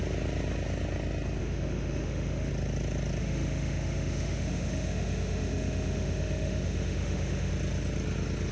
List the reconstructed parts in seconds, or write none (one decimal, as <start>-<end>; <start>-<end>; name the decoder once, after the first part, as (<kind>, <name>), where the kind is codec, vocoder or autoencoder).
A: 1.4-2.5 (autoencoder, DAC-VAE); 3.2-7.5